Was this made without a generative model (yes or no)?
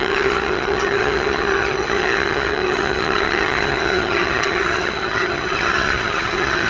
no